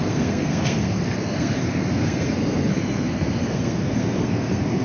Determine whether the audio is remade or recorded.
remade